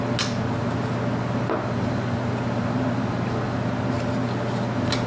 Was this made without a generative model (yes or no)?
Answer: yes